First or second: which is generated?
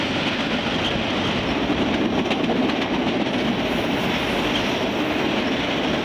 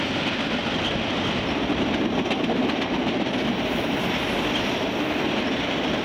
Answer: second